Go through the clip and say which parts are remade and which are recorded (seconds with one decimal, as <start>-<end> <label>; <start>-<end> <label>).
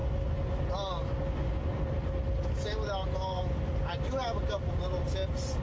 0.0-5.6 recorded